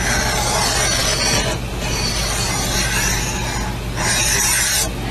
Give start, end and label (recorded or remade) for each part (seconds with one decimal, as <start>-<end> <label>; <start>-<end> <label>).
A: 0.0-5.1 recorded